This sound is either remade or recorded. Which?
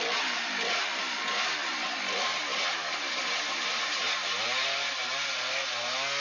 recorded